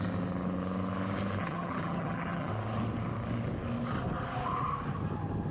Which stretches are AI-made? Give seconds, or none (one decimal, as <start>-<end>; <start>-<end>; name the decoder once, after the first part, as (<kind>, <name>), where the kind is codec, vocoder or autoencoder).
1.4-2.5 (vocoder, HiFi-GAN)